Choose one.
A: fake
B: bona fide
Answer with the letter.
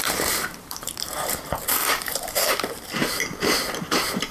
A